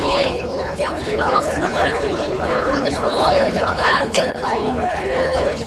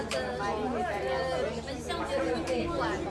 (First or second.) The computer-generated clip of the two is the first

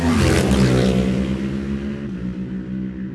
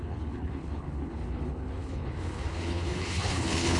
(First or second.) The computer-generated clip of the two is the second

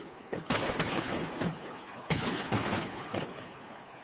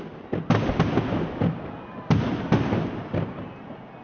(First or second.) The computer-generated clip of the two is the first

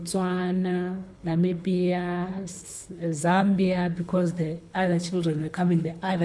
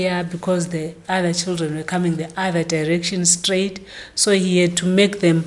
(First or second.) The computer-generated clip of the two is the first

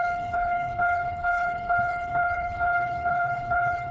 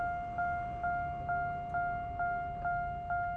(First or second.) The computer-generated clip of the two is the first